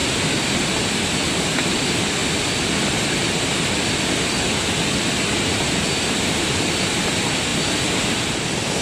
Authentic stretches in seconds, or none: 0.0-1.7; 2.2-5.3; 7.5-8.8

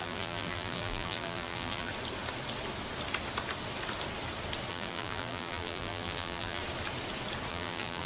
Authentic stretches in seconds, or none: 1.9-4.7; 6.6-7.5

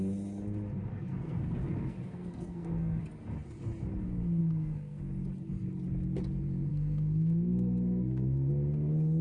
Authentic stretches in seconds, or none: 0.0-0.9; 3.0-4.4; 5.0-6.7; 8.5-9.2

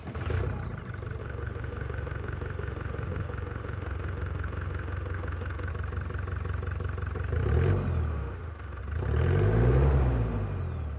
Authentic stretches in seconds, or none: 0.0-1.2; 5.7-8.1; 8.8-11.0

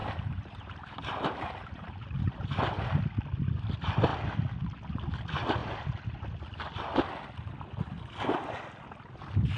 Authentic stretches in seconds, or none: 3.0-9.6

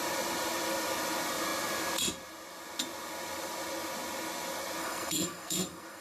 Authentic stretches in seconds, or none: 0.0-4.8